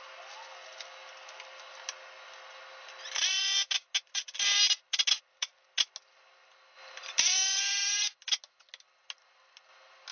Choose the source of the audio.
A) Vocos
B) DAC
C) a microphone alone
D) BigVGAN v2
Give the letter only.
C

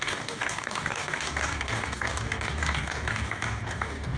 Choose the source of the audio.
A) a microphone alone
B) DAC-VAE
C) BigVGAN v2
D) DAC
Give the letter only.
D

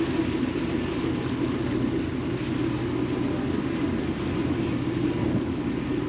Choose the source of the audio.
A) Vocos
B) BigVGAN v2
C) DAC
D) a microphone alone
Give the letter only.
D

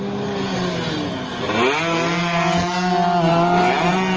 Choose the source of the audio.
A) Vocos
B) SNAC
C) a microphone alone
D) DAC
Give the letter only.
C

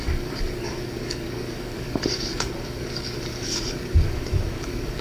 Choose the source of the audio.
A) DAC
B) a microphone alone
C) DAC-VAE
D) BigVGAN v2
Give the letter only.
A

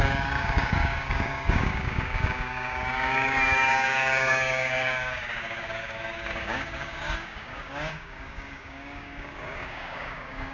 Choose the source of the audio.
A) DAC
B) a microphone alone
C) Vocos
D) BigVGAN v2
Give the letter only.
A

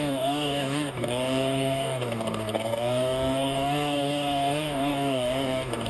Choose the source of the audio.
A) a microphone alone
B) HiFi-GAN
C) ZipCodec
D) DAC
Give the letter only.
D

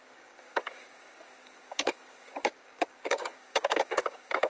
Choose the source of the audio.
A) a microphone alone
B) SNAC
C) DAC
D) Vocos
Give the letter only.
C